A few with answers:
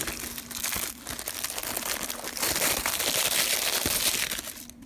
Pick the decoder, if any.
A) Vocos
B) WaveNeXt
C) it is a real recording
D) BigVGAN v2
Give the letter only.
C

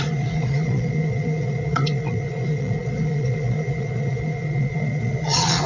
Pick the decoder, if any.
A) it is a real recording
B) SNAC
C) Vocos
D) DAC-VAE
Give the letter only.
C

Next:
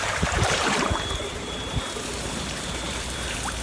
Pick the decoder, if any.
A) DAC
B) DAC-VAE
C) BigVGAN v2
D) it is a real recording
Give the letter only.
C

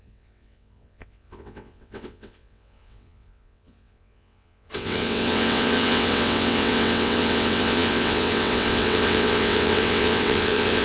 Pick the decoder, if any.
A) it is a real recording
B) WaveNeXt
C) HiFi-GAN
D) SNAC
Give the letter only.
B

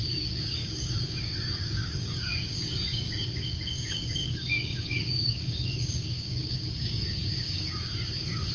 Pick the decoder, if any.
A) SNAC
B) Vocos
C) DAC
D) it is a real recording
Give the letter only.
C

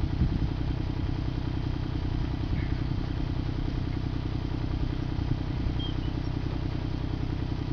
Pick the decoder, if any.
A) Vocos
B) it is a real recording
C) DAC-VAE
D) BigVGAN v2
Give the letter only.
B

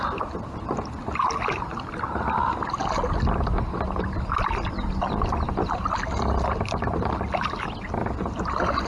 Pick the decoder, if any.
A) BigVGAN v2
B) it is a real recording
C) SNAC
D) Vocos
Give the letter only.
B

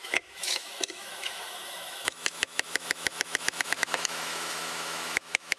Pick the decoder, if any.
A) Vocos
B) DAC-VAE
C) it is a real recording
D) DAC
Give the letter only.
B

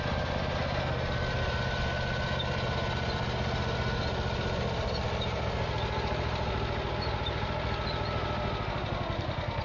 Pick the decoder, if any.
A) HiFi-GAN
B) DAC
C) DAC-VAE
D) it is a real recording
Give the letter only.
D